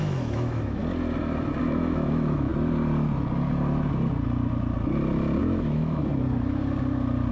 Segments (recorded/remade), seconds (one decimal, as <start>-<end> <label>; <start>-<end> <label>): 0.0-0.8 remade; 0.8-1.6 recorded; 1.6-2.5 remade; 2.5-5.4 recorded; 5.4-6.0 remade; 6.0-7.3 recorded